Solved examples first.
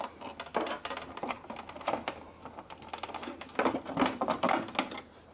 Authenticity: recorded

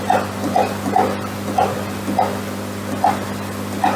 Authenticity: recorded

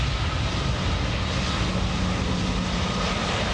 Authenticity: recorded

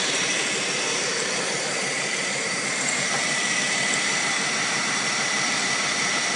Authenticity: remade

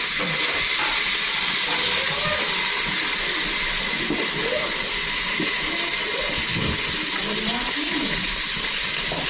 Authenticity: recorded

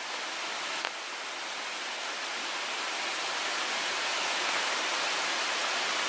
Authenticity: recorded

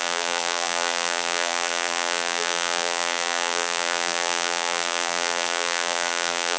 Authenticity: remade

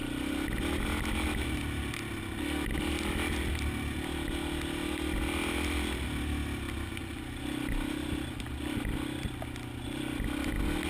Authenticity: recorded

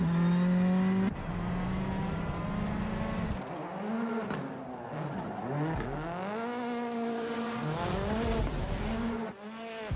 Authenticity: recorded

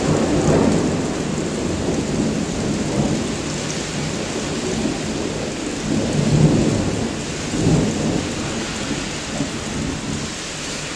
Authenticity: recorded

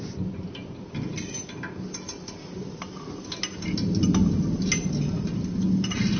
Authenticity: recorded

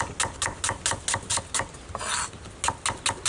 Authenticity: recorded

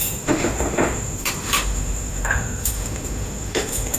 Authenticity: remade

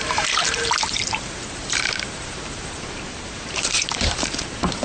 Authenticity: remade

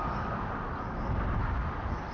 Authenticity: recorded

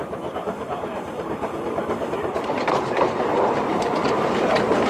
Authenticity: remade